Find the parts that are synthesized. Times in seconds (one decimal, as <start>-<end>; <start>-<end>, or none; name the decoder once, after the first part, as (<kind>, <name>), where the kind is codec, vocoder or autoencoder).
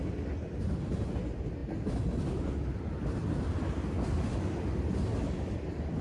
none